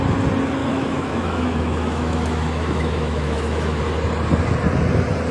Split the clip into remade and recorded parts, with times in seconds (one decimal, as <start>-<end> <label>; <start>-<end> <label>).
0.0-0.6 recorded; 0.6-3.8 remade; 3.8-5.3 recorded